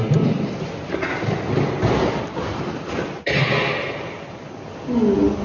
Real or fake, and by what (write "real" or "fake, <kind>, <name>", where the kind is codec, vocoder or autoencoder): real